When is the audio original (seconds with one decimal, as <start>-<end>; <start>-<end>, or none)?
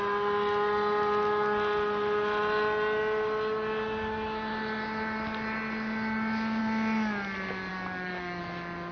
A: 0.0-7.7; 8.4-8.9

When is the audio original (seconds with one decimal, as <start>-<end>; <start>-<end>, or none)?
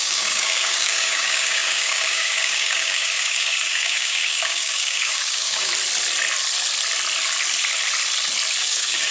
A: 5.7-8.6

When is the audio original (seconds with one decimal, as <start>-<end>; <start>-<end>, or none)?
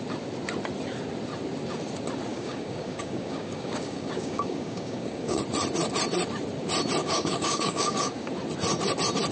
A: 0.0-2.3; 5.4-7.0; 8.3-9.3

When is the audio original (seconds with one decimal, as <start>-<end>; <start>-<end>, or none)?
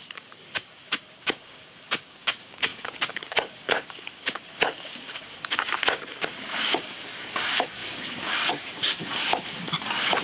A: none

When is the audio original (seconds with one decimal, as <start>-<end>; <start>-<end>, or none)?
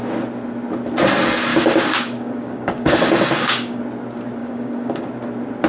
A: 0.0-1.5; 3.8-4.4; 5.1-5.7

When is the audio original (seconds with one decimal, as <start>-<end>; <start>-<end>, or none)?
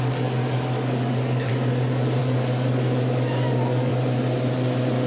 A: 1.5-2.2; 3.9-5.1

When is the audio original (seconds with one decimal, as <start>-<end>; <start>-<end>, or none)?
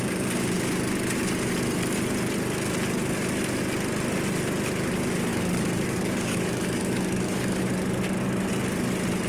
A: 0.0-5.3; 7.6-9.3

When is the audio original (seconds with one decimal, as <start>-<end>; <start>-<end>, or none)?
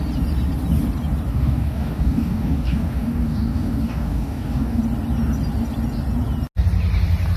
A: 0.0-1.3; 4.8-7.4